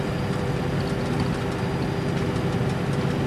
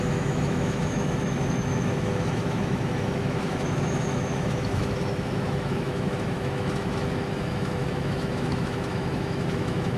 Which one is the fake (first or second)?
second